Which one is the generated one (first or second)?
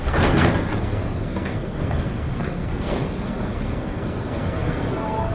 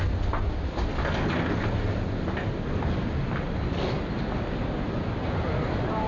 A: first